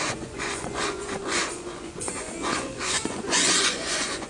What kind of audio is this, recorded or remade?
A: remade